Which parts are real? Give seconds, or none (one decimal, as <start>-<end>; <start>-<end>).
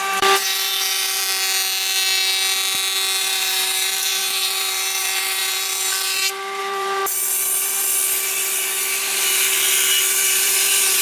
1.2-3.2; 7.0-10.1